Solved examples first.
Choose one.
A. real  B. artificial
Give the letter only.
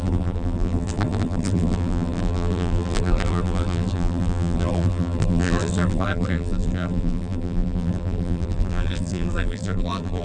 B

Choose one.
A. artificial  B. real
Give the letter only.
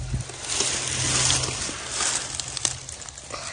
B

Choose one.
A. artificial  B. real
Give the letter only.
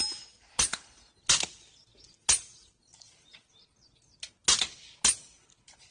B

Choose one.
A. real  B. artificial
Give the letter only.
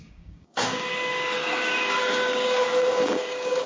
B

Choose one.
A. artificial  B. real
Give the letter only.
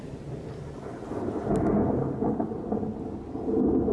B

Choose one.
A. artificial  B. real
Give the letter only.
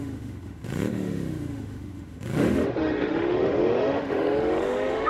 A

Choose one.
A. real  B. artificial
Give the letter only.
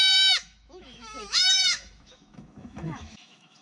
B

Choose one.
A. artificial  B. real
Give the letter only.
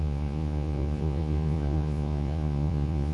A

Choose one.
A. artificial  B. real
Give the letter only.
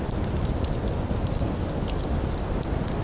B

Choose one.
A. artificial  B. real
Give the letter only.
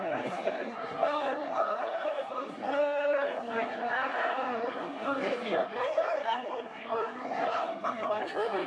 A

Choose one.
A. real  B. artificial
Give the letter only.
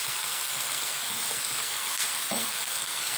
B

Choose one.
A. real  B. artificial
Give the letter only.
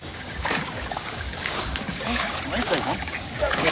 B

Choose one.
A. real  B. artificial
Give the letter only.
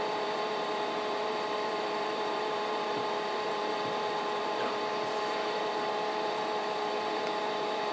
B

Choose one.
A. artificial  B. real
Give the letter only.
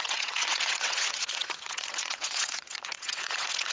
A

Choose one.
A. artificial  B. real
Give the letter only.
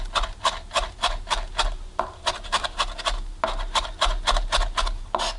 B